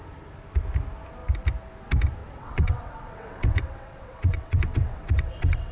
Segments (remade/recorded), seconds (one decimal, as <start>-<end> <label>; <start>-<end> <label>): 0.0-2.2 recorded; 2.2-5.7 remade